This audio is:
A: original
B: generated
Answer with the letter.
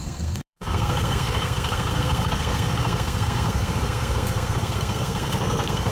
B